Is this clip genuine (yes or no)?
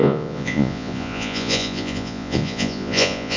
no